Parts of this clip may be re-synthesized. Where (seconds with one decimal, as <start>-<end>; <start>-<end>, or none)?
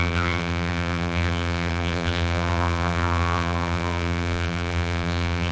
0.0-5.5